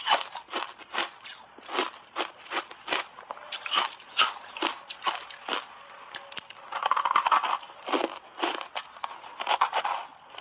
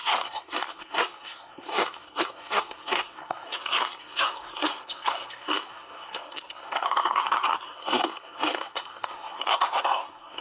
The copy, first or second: second